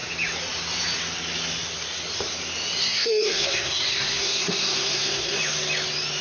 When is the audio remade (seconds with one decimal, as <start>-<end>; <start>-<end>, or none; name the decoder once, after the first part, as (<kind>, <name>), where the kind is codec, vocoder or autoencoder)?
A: 2.8-5.4 (codec, SNAC)